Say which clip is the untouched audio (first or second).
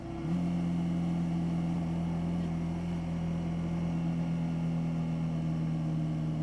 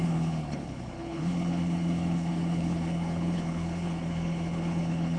first